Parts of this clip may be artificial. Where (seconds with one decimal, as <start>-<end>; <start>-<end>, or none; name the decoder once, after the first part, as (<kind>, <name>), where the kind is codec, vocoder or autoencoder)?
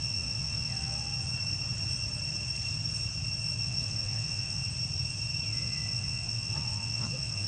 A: 0.0-1.1 (vocoder, WaveNeXt); 3.6-4.6; 5.5-7.5